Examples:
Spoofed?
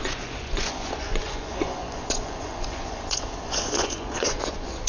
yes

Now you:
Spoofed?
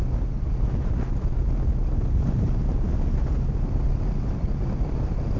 no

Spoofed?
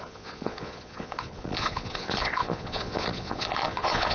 yes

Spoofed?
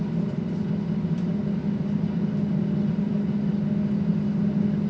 no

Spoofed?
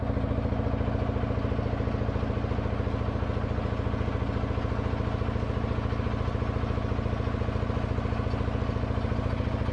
no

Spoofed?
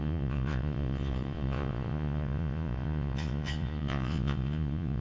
yes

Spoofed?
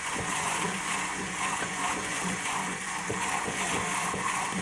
yes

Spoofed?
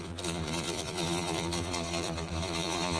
yes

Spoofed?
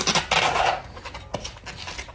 no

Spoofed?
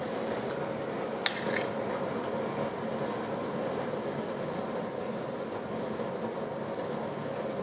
no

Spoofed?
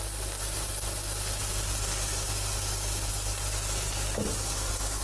no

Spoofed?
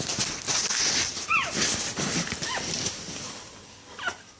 no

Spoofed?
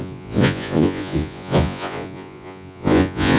yes